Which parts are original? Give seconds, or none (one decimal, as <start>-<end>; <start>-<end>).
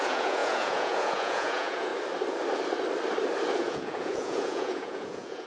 1.9-3.6